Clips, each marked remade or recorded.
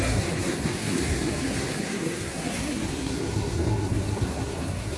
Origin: remade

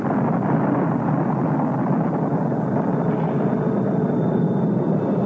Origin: recorded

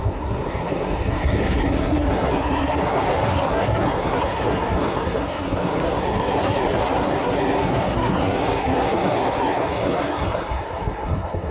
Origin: remade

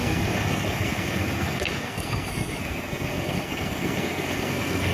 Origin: remade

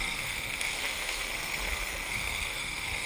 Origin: remade